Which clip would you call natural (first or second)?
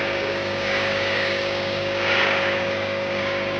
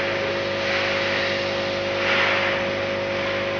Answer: second